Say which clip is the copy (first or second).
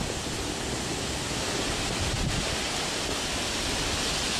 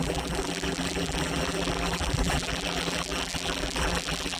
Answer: second